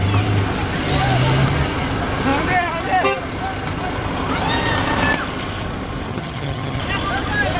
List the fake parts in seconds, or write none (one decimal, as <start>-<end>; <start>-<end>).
6.1-6.8